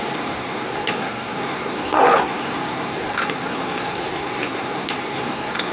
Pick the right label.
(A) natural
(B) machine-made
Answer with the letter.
B